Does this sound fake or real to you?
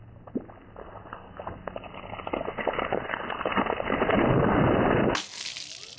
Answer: real